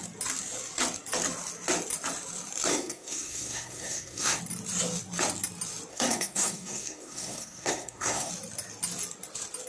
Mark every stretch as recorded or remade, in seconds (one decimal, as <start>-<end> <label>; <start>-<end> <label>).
0.0-2.7 recorded; 2.7-4.4 remade; 4.4-5.9 recorded; 5.9-8.3 remade; 8.3-9.7 recorded